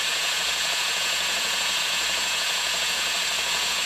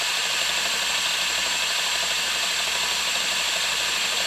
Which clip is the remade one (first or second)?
first